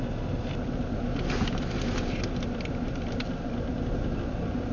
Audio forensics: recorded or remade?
recorded